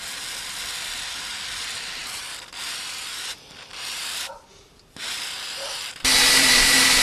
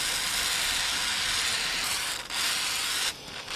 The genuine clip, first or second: second